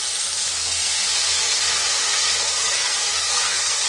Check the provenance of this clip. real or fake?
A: fake